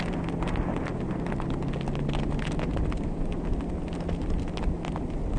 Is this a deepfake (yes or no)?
no